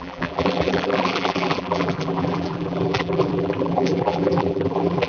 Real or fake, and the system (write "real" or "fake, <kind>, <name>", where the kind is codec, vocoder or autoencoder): fake, vocoder, BigVGAN v2